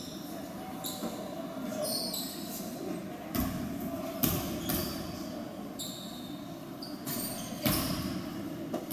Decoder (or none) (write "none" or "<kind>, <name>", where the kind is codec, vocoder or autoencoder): none